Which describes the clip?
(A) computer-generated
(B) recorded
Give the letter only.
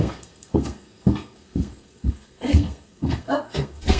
A